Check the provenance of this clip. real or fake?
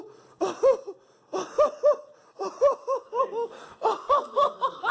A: real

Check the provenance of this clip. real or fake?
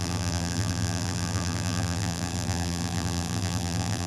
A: fake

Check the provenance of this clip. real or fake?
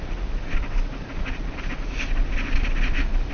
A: real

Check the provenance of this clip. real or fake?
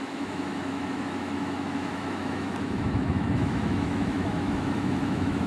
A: fake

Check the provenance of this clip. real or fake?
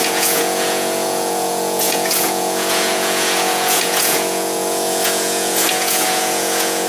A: fake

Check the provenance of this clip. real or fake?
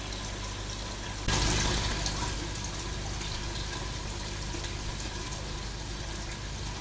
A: real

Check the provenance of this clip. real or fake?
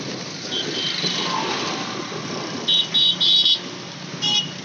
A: real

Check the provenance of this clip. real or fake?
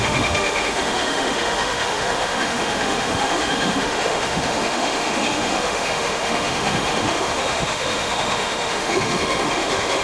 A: fake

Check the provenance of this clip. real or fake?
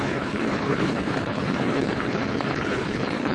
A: fake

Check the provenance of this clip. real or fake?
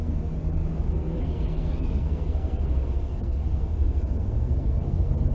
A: fake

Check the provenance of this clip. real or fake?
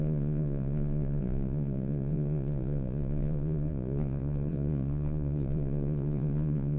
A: fake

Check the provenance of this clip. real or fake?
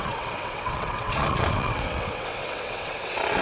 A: fake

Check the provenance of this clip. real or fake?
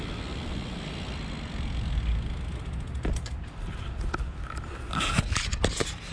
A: real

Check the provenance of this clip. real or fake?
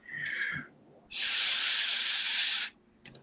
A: real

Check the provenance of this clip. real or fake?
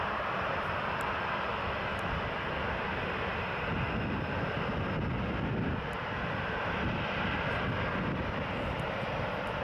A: real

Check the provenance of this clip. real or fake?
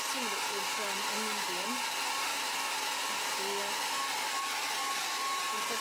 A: real